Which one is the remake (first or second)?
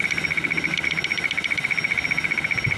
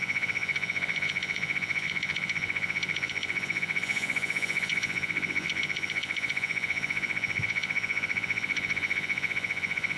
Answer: second